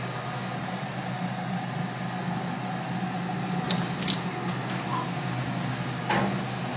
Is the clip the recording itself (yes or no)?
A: yes